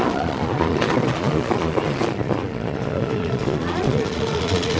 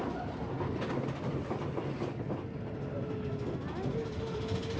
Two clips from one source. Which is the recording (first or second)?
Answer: second